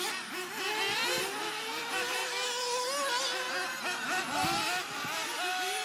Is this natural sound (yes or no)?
yes